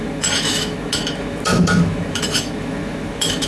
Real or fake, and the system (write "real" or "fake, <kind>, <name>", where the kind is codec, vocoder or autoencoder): fake, autoencoder, DAC-VAE